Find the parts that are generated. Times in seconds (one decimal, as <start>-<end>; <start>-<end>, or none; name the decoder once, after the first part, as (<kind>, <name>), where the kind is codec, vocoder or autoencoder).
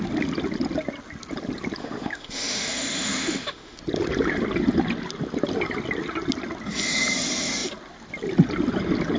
1.8-3.8 (autoencoder, DAC-VAE)